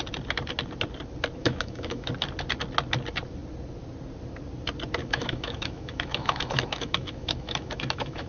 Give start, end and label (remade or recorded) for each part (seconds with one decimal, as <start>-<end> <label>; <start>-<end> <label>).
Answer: 0.0-1.4 recorded; 1.4-2.1 remade; 2.1-5.0 recorded; 5.0-8.3 remade